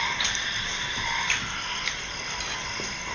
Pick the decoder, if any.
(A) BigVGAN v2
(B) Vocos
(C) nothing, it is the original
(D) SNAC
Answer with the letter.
C